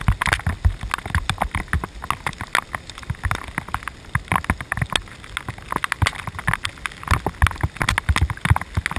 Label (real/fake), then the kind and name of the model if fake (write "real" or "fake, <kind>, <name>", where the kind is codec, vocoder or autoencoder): real